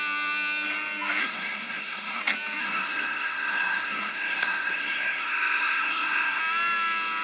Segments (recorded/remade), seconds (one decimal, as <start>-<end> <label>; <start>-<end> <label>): 0.0-1.2 recorded; 1.2-2.2 remade; 2.2-2.6 recorded; 2.6-6.4 remade; 6.4-7.2 recorded